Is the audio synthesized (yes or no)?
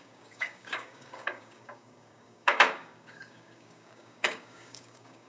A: yes